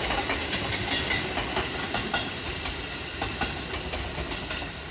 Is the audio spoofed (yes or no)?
no